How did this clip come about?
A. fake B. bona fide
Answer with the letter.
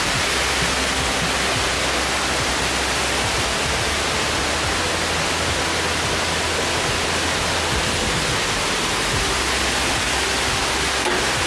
B